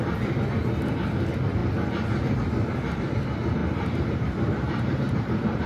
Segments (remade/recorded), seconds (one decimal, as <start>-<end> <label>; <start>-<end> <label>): 0.0-3.6 recorded; 3.6-5.7 remade